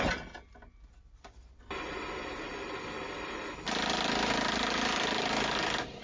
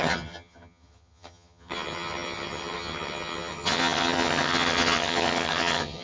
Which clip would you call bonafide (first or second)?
first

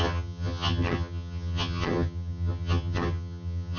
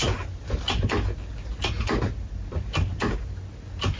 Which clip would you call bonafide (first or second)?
second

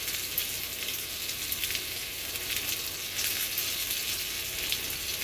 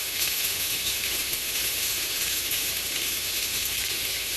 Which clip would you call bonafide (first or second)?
first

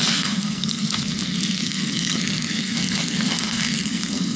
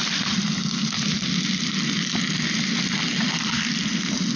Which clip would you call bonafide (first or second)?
second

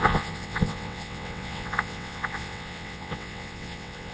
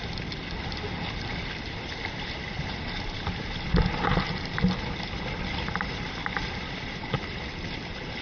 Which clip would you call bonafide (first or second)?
second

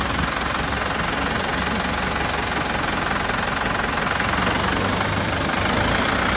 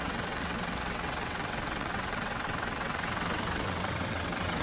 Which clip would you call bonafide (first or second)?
first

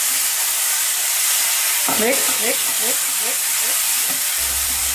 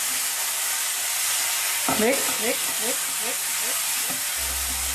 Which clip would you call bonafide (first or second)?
second